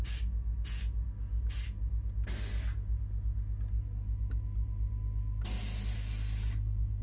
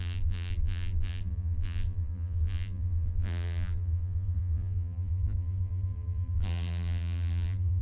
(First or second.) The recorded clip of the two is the first